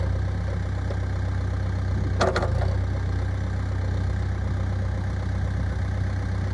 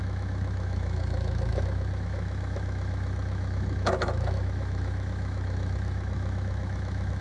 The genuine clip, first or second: first